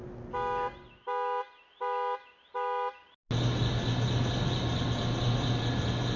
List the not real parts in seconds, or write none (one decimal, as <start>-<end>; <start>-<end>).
none